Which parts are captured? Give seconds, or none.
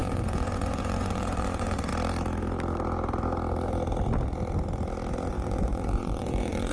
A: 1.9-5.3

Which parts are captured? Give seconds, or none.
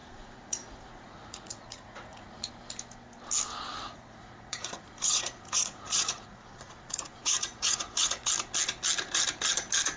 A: 2.5-3.7; 8.3-10.0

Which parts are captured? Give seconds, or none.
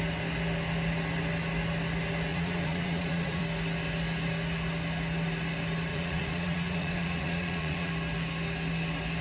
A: 0.0-2.3; 3.4-5.9; 7.9-9.2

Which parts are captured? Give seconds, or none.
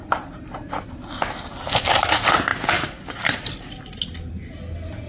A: 0.0-5.1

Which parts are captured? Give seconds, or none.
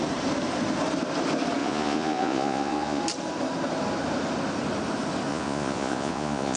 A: 0.0-1.6; 3.0-5.3